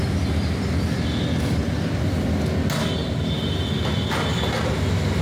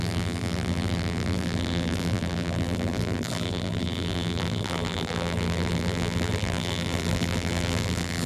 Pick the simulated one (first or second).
second